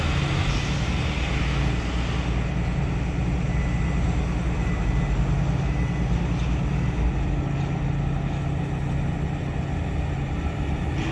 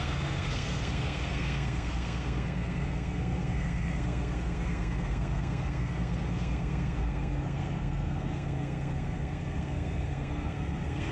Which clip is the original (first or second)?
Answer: first